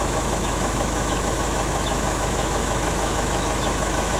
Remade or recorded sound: remade